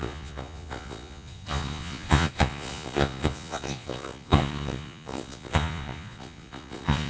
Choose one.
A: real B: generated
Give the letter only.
B